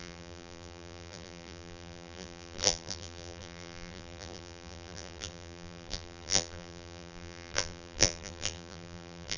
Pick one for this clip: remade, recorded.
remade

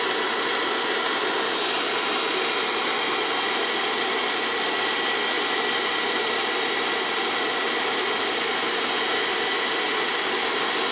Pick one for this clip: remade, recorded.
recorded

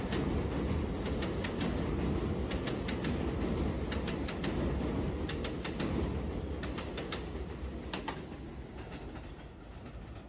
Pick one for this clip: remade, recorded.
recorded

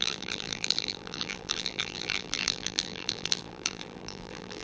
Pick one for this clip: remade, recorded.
remade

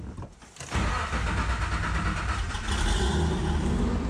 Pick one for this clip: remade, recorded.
recorded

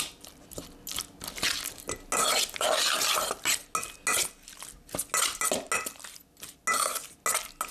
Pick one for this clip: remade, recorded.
recorded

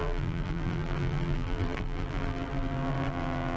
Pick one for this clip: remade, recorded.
remade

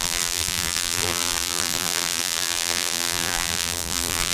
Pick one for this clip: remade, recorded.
remade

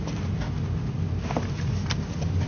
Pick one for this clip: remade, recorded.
recorded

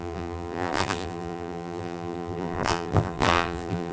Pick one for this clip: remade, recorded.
remade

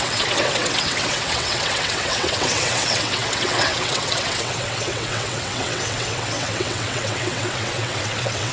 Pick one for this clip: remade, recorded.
remade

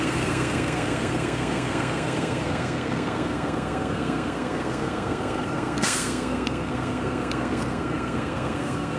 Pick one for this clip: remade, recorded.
remade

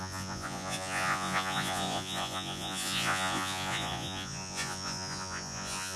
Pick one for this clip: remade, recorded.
remade